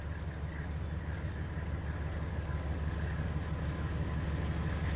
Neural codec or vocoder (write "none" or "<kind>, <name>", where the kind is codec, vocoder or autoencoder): none